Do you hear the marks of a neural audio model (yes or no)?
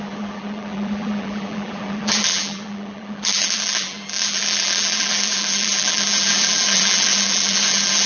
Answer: yes